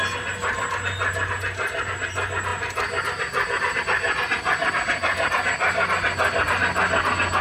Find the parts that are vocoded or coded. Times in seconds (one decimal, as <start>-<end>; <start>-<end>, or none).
none